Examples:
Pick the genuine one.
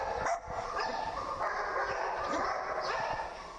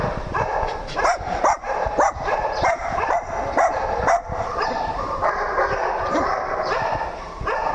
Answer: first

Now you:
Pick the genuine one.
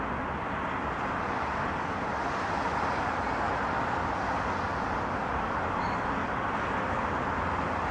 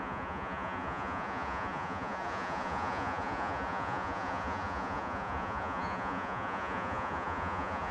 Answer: first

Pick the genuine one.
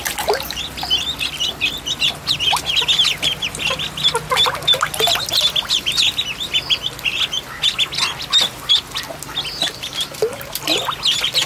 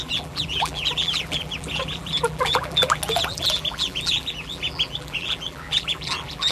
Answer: first